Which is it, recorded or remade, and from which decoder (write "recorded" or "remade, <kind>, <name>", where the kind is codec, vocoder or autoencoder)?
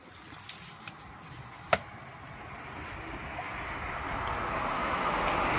recorded